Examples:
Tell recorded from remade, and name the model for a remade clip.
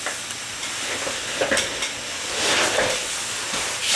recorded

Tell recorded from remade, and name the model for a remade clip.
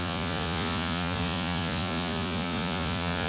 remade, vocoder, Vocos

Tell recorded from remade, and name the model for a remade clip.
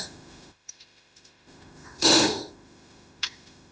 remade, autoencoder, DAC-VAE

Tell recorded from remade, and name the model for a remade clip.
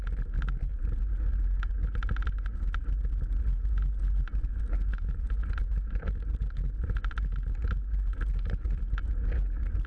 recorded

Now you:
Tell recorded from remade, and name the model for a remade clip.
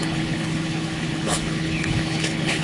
remade, codec, HILCodec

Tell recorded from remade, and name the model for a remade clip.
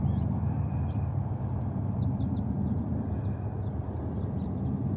remade, vocoder, BigVGAN v2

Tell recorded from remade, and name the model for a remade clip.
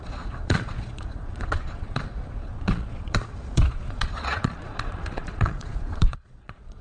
remade, vocoder, Vocos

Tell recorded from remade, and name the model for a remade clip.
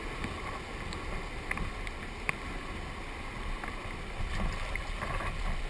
recorded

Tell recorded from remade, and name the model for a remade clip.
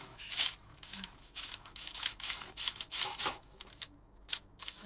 remade, autoencoder, DAC-VAE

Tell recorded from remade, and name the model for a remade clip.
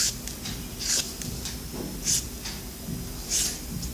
recorded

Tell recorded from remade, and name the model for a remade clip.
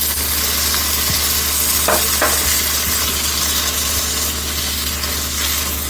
recorded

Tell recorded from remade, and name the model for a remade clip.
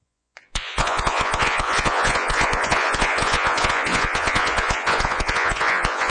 remade, vocoder, Vocos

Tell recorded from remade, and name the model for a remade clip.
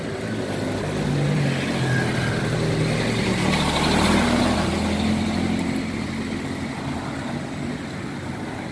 recorded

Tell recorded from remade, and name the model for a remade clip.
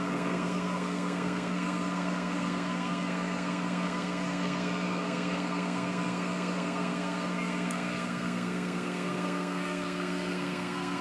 remade, codec, SNAC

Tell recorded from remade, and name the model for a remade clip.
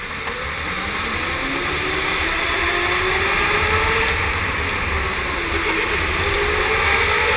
recorded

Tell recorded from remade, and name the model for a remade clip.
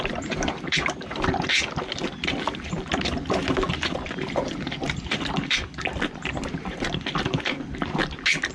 recorded